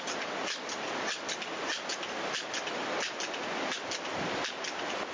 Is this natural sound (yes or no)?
yes